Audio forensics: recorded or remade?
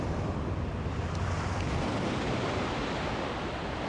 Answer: recorded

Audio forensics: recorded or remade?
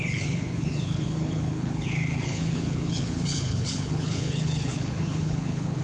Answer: remade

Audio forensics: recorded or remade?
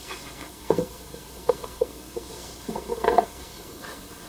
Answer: remade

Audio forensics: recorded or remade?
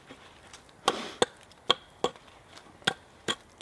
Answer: recorded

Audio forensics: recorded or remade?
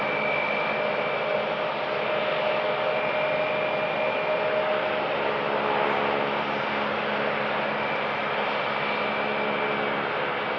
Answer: recorded